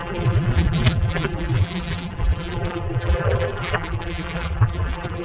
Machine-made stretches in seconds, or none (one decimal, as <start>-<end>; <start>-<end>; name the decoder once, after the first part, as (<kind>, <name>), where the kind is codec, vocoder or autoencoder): 0.0-5.2 (vocoder, BigVGAN v2)

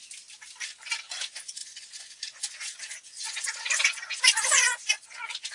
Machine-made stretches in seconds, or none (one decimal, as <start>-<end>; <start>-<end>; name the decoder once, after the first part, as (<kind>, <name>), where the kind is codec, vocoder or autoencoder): 1.1-5.5 (vocoder, Vocos)